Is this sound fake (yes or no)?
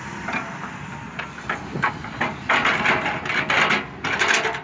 no